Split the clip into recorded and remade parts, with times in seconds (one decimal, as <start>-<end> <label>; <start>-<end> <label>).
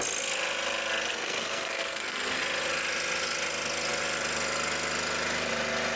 0.0-1.1 recorded; 1.1-2.4 remade; 2.4-6.0 recorded